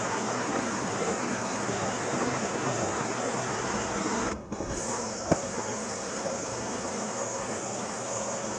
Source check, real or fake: fake